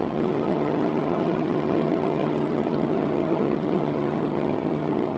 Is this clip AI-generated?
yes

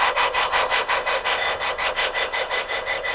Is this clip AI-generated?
yes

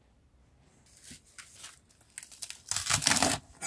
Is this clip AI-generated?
no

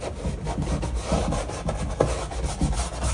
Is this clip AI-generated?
no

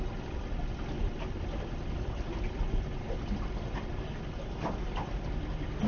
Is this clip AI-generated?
no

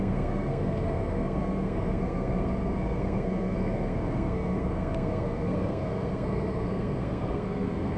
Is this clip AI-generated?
yes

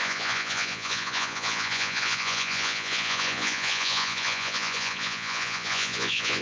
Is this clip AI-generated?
yes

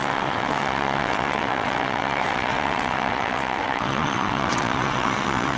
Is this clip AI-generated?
yes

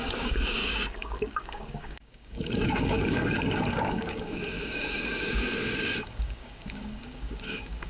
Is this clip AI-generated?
yes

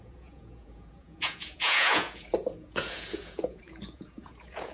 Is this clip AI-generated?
yes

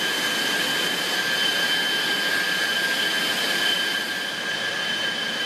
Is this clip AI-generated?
no